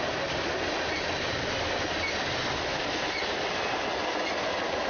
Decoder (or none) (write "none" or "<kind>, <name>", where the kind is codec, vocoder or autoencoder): none